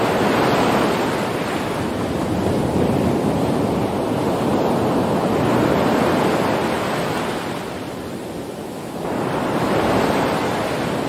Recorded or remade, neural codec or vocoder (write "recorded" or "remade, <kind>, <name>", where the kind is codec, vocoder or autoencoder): recorded